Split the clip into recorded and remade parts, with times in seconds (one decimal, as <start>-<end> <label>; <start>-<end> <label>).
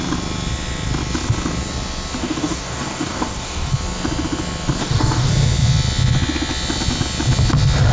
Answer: 0.0-2.2 recorded; 2.2-3.7 remade; 3.7-4.8 recorded; 4.8-5.3 remade; 5.3-7.9 recorded